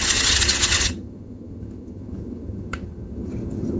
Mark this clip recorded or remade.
remade